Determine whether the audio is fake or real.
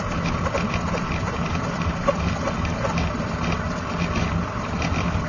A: real